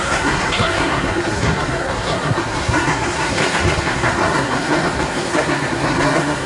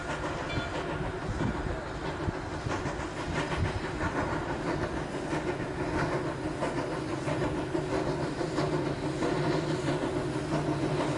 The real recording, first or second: second